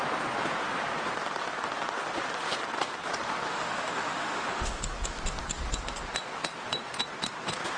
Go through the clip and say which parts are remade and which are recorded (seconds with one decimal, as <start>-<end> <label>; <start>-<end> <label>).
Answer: 0.0-3.5 recorded; 3.5-4.8 remade; 4.8-7.8 recorded